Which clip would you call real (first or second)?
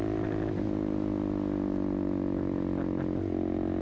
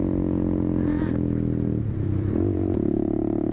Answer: first